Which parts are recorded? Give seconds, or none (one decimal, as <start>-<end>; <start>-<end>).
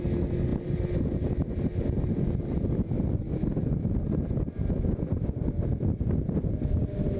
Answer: 0.0-7.2